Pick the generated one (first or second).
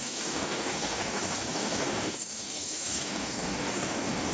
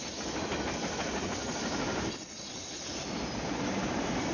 first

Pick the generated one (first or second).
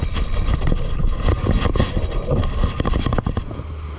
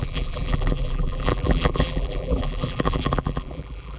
second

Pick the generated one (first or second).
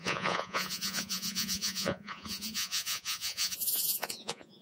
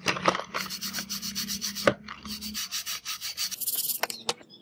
first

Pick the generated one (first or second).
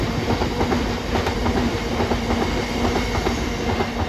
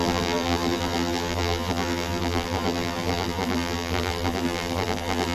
second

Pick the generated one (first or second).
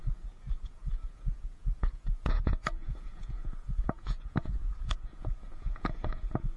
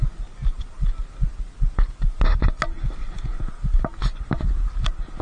first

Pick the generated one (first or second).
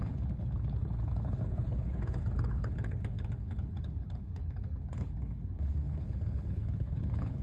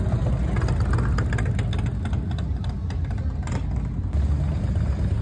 first